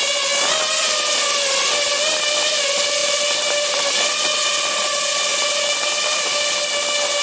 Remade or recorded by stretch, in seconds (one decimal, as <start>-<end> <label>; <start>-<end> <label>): 0.0-3.0 recorded; 3.0-3.9 remade; 3.9-5.3 recorded; 5.3-6.2 remade; 6.2-7.2 recorded